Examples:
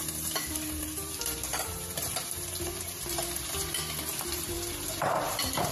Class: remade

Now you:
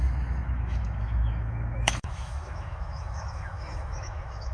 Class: remade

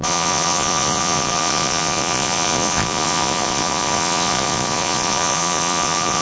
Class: remade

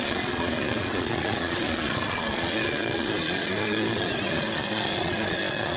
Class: remade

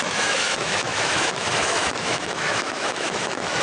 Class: remade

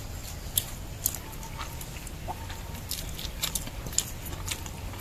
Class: recorded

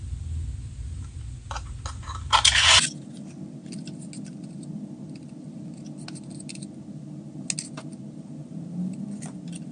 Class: recorded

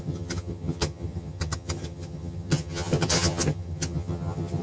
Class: remade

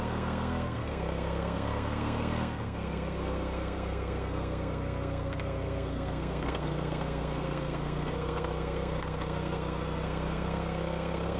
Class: remade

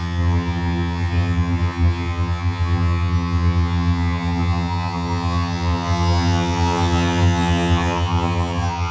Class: remade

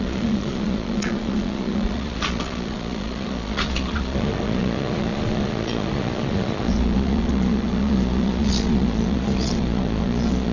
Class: remade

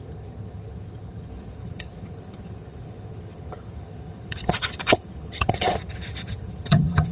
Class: remade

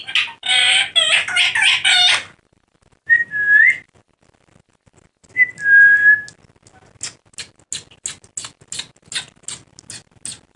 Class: recorded